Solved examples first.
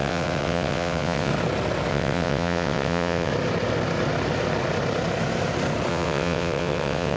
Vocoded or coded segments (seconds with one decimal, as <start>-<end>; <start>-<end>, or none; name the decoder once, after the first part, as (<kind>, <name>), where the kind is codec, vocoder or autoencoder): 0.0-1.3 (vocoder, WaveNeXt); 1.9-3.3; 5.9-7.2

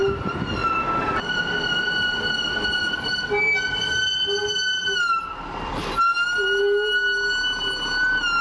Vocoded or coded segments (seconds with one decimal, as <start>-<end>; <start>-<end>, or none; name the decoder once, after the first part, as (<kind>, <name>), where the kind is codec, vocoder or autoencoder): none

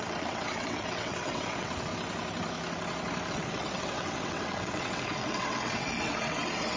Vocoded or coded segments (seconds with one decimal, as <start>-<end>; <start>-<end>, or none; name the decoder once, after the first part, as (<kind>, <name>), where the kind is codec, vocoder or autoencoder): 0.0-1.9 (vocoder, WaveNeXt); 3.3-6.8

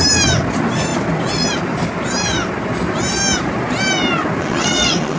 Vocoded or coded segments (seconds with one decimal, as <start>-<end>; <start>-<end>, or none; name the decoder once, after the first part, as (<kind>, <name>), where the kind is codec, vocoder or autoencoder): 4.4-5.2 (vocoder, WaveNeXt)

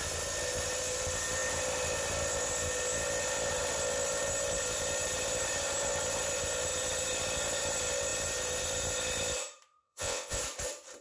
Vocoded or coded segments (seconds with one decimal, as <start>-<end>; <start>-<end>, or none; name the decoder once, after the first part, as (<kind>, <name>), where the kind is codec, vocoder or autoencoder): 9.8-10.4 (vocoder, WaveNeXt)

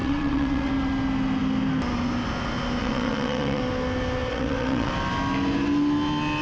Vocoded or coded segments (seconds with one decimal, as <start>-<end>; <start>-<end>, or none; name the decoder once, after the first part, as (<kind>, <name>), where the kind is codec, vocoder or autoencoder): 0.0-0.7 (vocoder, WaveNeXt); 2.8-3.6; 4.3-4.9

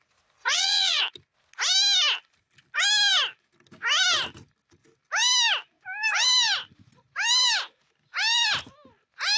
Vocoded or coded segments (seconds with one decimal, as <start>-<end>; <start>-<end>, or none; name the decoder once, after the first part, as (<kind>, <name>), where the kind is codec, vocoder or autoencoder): 0.4-1.0 (vocoder, WaveNeXt)

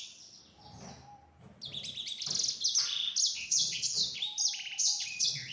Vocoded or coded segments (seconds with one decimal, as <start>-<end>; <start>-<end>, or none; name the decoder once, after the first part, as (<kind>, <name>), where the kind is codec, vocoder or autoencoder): 0.0-0.4 (vocoder, WaveNeXt); 3.4-4.0; 4.8-5.5